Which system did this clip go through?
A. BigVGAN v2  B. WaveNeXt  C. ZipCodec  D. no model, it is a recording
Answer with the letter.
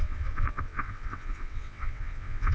B